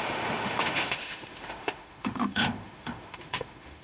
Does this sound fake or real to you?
fake